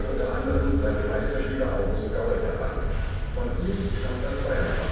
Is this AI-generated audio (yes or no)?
no